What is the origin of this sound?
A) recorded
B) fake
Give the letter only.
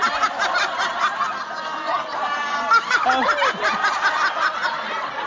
A